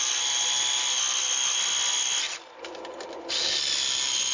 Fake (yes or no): no